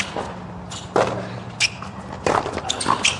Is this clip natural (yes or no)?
yes